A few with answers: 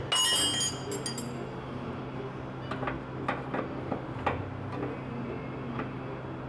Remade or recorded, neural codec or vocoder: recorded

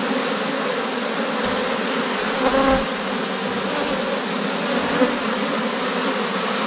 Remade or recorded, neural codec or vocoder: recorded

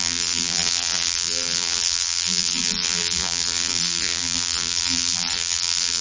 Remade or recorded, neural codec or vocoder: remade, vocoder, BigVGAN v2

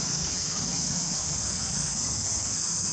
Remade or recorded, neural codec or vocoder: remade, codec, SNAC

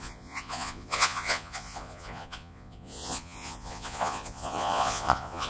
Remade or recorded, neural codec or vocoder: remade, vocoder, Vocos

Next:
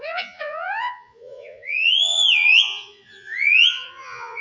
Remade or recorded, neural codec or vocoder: remade, vocoder, Vocos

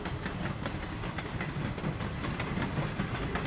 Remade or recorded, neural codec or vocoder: recorded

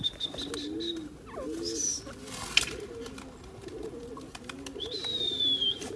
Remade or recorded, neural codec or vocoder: recorded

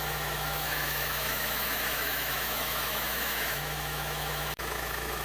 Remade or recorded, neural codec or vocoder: remade, autoencoder, DAC-VAE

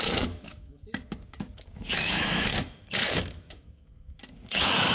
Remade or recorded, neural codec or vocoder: remade, autoencoder, DAC-VAE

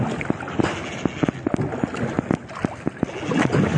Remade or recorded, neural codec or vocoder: recorded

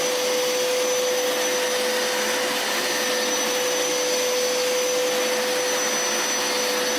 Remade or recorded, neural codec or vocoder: recorded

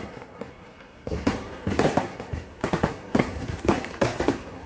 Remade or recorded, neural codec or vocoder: remade, codec, SNAC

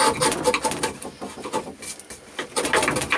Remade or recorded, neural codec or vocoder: recorded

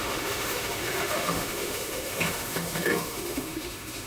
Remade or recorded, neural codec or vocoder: remade, autoencoder, DAC-VAE